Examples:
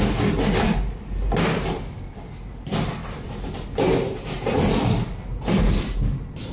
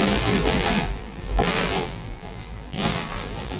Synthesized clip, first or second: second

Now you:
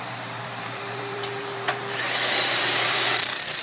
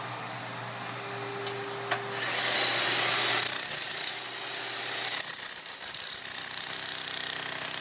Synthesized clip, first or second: first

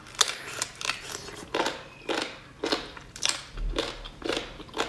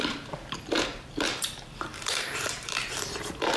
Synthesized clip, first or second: second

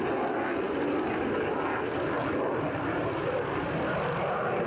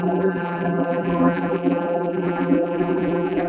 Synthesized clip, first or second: second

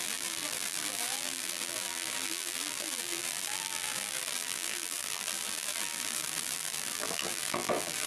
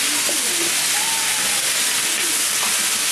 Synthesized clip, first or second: first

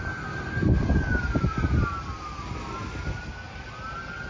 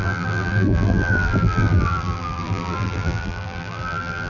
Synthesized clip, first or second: second